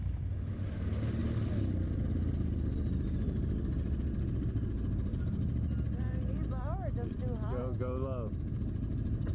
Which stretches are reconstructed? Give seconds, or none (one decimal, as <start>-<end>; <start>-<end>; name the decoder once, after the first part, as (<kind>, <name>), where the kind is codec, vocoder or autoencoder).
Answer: none